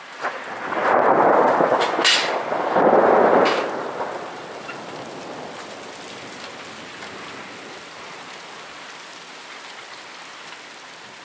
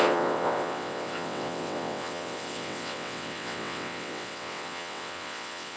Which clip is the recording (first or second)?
first